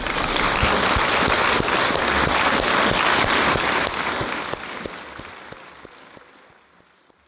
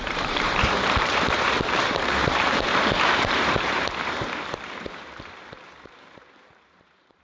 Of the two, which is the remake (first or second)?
second